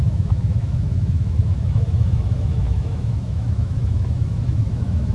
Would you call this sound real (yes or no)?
no